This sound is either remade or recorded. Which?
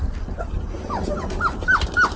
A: recorded